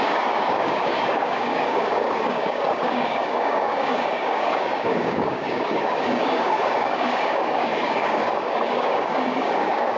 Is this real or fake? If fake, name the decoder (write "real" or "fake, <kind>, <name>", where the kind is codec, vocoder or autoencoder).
fake, codec, DAC